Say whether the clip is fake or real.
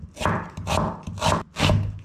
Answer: real